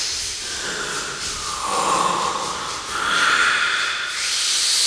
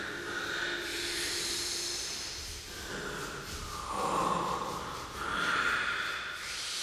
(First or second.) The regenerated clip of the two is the first